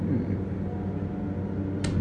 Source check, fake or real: real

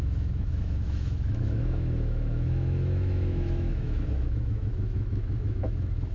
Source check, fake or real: fake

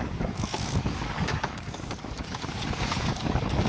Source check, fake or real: fake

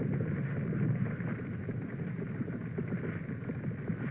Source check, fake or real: real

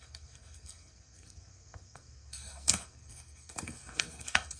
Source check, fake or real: fake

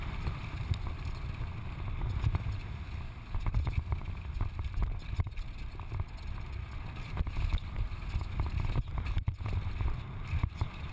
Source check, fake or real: real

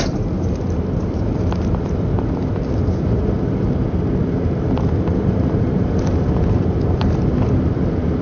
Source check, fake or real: fake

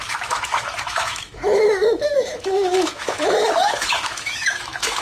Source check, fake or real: fake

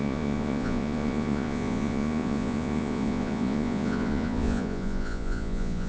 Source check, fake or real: fake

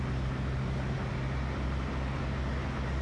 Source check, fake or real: real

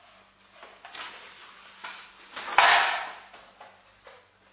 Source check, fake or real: real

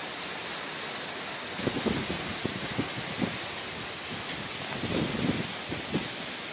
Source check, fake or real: real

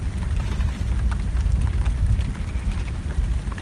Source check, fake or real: real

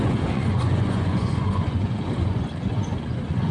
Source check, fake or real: fake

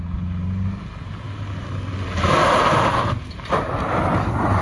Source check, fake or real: real